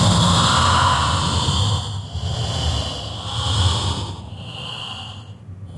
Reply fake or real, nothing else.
real